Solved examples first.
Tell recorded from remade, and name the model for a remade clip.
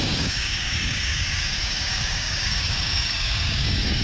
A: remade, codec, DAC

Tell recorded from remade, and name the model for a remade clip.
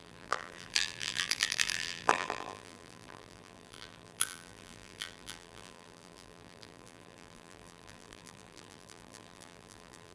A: remade, vocoder, BigVGAN v2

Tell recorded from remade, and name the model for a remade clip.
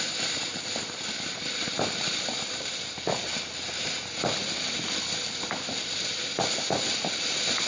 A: recorded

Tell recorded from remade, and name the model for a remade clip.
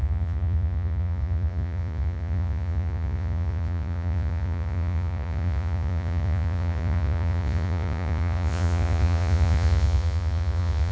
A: remade, vocoder, Vocos